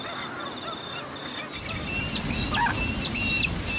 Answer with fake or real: real